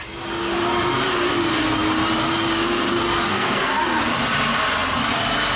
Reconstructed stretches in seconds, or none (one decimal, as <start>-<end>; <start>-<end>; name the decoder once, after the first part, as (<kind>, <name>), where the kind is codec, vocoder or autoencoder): 3.3-3.9 (codec, SNAC)